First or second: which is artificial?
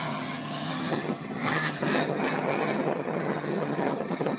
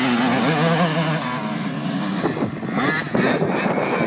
first